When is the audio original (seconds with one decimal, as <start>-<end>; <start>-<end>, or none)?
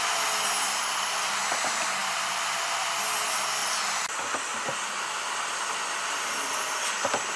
0.0-7.4